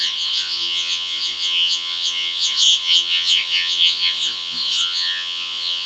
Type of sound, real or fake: fake